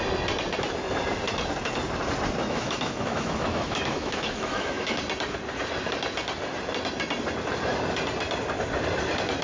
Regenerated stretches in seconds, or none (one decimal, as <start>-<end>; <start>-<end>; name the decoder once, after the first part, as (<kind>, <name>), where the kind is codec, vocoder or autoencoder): 2.4-5.0 (autoencoder, DAC-VAE)